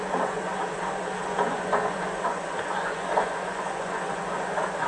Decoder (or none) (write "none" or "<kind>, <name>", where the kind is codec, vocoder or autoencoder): vocoder, Vocos